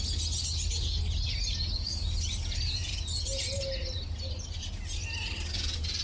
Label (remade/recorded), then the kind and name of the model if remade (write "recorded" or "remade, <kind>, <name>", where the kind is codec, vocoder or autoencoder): recorded